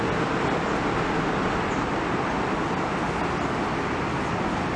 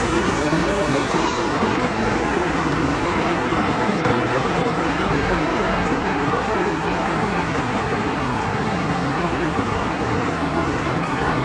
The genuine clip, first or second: first